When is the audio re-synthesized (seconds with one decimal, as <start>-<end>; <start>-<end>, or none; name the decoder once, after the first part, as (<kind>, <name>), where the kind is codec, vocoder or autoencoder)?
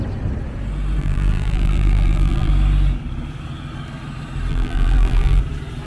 1.0-2.5 (vocoder, BigVGAN v2); 4.5-5.4